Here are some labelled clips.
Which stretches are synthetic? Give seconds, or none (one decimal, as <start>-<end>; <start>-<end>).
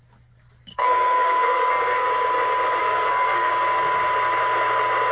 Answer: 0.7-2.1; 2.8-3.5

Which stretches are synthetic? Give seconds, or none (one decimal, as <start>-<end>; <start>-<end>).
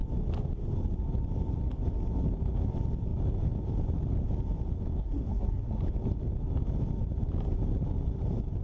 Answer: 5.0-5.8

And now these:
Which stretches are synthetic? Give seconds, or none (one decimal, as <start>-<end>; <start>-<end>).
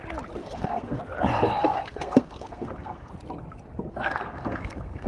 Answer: 0.4-1.0; 1.6-3.1; 3.9-5.1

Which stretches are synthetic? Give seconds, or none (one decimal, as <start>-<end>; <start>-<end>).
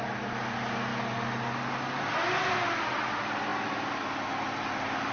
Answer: none